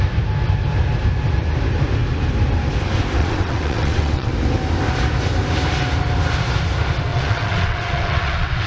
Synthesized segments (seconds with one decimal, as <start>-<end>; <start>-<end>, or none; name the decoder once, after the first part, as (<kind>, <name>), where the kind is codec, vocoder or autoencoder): 3.2-4.3 (vocoder, WaveNeXt); 7.1-8.7